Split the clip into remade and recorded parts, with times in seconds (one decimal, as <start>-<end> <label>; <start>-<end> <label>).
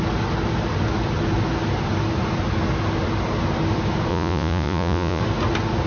0.0-4.1 recorded; 4.1-5.2 remade; 5.2-5.9 recorded